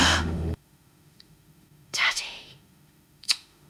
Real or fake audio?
fake